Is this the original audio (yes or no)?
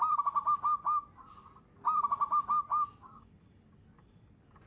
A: yes